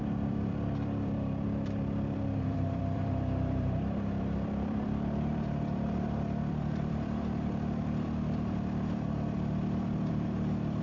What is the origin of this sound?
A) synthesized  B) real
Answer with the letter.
A